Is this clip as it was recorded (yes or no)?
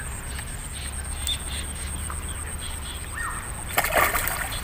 yes